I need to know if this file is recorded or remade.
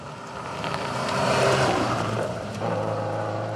remade